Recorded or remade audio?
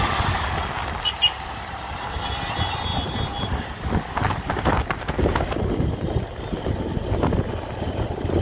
recorded